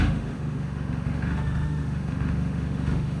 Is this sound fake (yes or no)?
yes